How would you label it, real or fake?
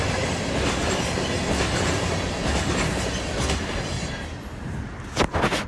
real